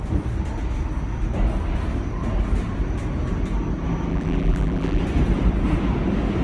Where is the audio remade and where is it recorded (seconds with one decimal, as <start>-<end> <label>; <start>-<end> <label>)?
0.0-4.1 recorded; 4.1-5.0 remade; 5.0-6.4 recorded